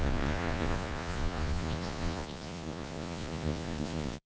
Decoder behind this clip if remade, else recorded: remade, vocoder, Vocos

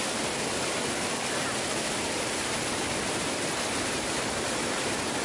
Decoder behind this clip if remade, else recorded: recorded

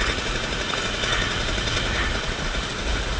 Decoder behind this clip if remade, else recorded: remade, vocoder, Vocos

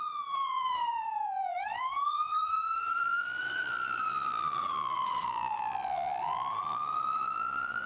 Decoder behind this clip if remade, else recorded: remade, vocoder, Vocos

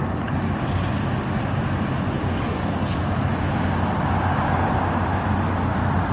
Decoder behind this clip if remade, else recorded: recorded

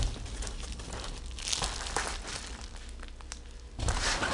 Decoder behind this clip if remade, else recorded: recorded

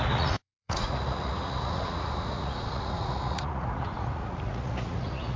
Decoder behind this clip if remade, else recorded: remade, vocoder, Vocos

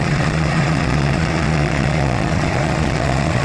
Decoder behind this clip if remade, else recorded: remade, vocoder, Vocos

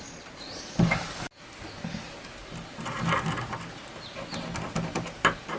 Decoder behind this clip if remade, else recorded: recorded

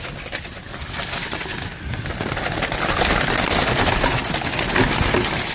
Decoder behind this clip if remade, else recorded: recorded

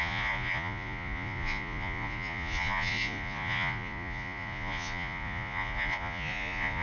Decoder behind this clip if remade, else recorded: remade, vocoder, Vocos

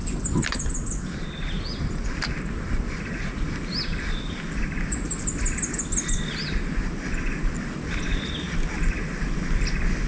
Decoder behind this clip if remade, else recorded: recorded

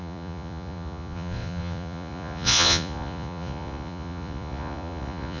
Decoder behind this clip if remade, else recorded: remade, vocoder, Vocos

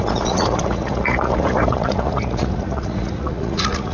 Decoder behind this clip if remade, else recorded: remade, vocoder, Vocos